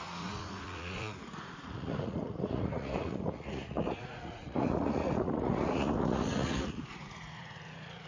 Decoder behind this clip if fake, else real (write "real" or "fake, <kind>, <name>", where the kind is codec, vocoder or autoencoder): fake, vocoder, Vocos